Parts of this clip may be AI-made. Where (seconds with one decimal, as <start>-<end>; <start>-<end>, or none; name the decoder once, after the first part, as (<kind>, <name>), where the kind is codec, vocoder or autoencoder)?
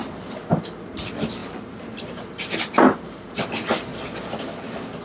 0.0-0.4 (vocoder, BigVGAN v2); 0.9-3.9; 4.4-5.0